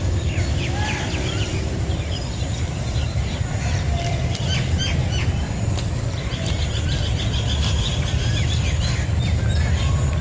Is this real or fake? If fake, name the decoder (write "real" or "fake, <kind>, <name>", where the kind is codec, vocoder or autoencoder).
fake, vocoder, BigVGAN v2